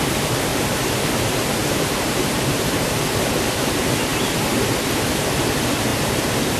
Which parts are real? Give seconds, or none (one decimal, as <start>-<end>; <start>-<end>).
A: 0.0-0.5; 1.0-1.6; 3.0-5.9